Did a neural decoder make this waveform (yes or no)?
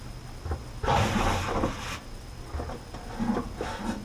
no